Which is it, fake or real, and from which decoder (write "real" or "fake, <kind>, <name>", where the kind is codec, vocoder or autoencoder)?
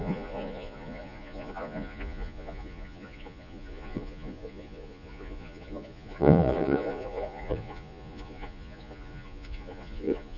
fake, vocoder, Vocos